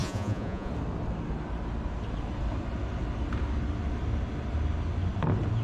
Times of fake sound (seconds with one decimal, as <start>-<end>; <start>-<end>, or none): 0.0-0.7